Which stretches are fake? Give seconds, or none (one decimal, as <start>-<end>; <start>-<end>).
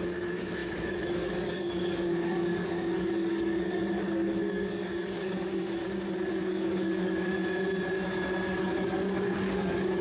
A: 0.0-5.8; 6.3-7.4; 8.5-10.0